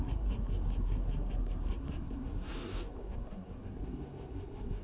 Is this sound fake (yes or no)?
yes